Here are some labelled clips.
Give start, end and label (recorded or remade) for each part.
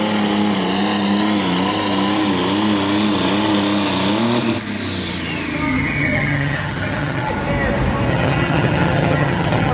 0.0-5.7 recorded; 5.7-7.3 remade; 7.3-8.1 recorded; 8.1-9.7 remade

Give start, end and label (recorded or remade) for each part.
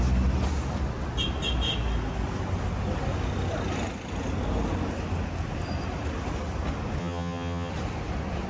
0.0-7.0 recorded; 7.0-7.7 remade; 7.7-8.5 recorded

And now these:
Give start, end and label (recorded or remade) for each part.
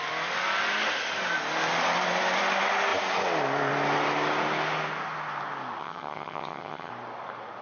0.0-5.8 recorded; 5.8-6.9 remade; 6.9-7.6 recorded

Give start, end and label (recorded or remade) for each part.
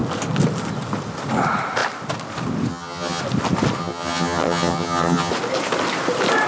0.0-2.7 recorded; 2.7-3.2 remade; 3.2-3.8 recorded; 3.8-5.3 remade; 5.3-6.5 recorded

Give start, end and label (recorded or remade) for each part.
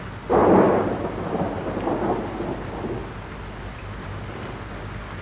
0.0-5.2 recorded